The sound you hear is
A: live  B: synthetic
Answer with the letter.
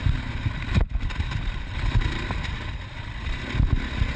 A